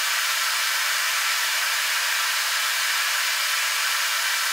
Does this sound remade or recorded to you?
recorded